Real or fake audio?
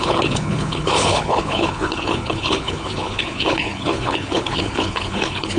fake